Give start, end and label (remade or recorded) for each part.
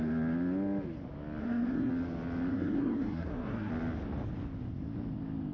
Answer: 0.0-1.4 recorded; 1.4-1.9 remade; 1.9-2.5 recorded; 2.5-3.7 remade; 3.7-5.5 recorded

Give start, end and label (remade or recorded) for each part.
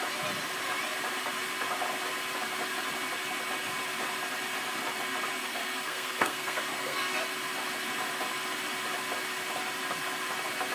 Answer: 0.0-5.4 recorded; 5.4-7.2 remade; 7.2-10.7 recorded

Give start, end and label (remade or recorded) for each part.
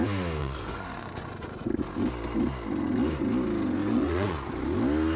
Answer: 0.0-0.4 recorded; 0.4-1.7 remade; 1.7-3.8 recorded; 3.8-4.5 remade; 4.5-5.2 recorded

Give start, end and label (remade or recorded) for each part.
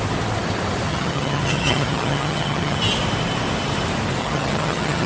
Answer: 0.0-0.9 recorded; 0.9-2.8 remade; 2.8-4.2 recorded; 4.2-5.1 remade